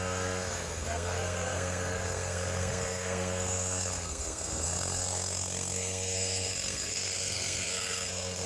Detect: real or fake fake